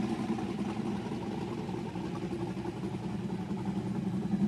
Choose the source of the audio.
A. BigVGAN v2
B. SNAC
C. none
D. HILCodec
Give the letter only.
C